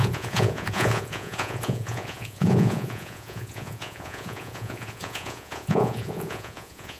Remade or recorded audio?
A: remade